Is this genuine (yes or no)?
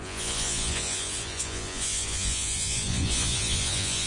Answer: no